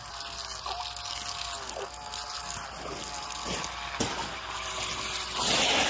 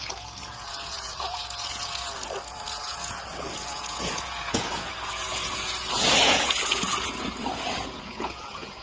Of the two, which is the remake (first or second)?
second